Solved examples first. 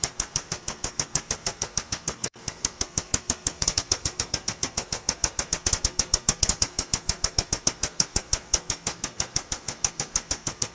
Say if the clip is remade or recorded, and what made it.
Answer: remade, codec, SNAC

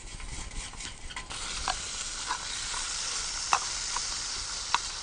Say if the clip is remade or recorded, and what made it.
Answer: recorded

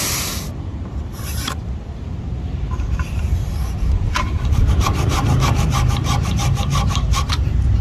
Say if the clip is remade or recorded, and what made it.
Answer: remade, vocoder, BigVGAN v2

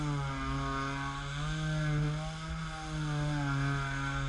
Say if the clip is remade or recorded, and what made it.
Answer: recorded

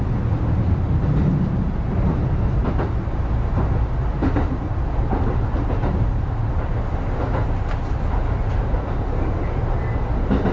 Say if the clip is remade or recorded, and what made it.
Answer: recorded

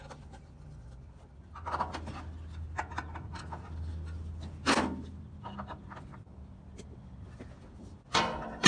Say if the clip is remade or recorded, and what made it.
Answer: recorded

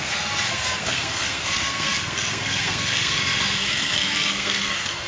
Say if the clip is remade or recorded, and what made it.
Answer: remade, codec, SNAC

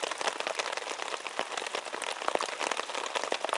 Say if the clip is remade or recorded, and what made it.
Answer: recorded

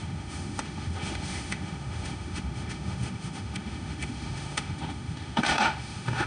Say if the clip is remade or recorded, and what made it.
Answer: remade, autoencoder, DAC-VAE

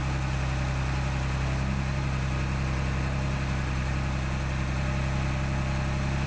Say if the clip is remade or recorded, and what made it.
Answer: recorded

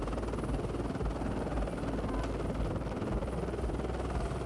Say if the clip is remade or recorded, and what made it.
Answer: recorded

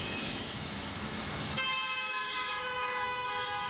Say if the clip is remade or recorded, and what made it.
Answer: remade, autoencoder, DAC-VAE